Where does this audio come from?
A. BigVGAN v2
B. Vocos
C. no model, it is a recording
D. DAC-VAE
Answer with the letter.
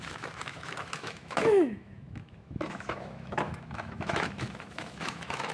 D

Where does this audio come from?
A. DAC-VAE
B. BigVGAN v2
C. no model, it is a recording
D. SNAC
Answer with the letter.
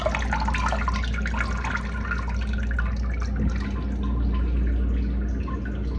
C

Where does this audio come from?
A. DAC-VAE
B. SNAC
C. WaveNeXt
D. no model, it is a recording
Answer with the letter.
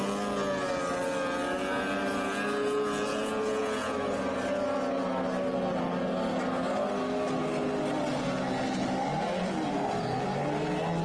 D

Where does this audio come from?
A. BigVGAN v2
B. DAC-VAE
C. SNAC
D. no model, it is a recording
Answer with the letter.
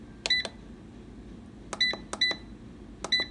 D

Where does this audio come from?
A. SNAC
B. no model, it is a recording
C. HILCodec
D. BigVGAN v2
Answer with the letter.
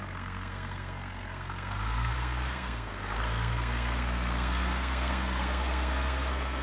A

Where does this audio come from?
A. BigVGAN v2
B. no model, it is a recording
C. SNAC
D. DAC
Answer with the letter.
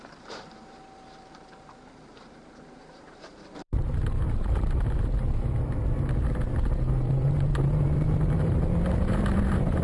A